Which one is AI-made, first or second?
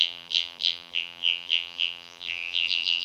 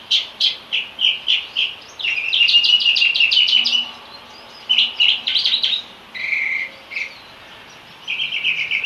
first